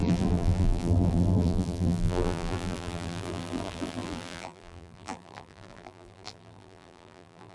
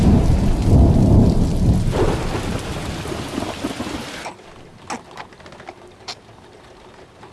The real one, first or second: second